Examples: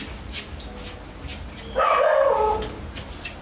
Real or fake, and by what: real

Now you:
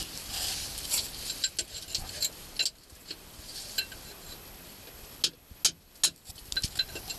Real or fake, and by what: real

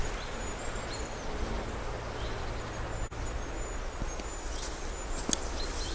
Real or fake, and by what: real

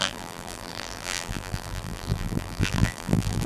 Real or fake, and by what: fake, vocoder, BigVGAN v2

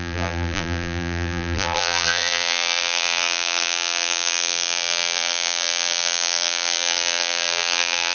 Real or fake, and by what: fake, vocoder, BigVGAN v2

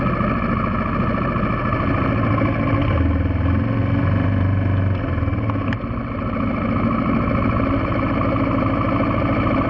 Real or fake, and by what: real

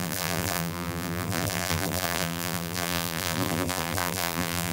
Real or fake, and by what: fake, vocoder, BigVGAN v2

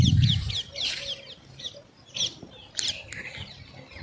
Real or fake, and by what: fake, vocoder, BigVGAN v2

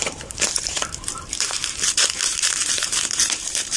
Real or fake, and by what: fake, vocoder, BigVGAN v2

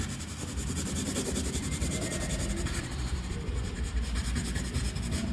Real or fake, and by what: fake, vocoder, BigVGAN v2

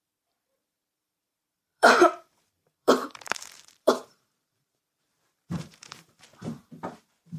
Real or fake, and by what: fake, vocoder, BigVGAN v2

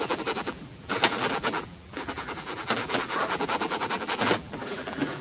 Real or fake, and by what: fake, vocoder, BigVGAN v2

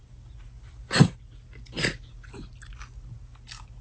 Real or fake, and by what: real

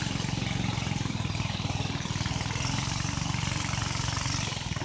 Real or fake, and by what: fake, vocoder, BigVGAN v2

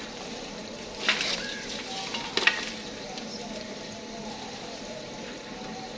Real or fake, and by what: fake, vocoder, BigVGAN v2